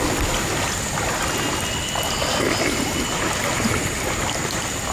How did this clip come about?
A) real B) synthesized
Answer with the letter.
A